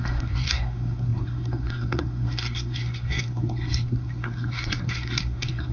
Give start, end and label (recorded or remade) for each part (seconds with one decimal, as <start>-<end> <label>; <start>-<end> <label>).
0.0-5.7 remade

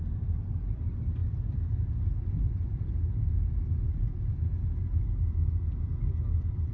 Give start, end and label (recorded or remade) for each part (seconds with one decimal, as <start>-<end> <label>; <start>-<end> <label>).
0.0-1.2 recorded; 1.2-2.8 remade; 2.8-6.7 recorded

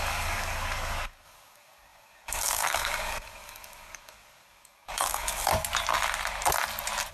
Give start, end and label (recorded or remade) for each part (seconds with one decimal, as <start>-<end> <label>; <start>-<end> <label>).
0.0-5.5 remade; 5.5-7.1 recorded

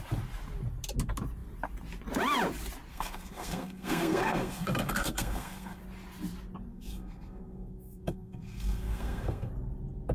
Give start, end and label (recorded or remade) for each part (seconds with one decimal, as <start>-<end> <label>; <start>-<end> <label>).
0.0-2.9 recorded; 2.9-5.8 remade; 5.8-6.7 recorded; 6.7-9.5 remade; 9.5-10.1 recorded